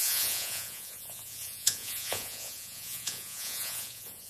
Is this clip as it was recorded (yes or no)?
no